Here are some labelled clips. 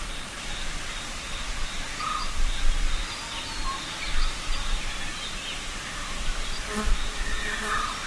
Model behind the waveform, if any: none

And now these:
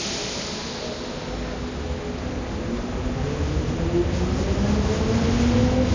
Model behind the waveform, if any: none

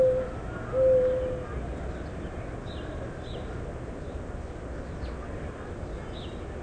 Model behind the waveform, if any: none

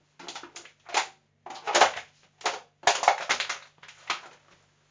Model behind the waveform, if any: none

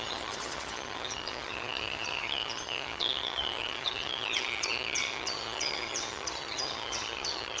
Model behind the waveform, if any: vocoder, HiFi-GAN